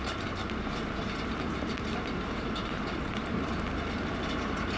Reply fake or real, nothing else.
real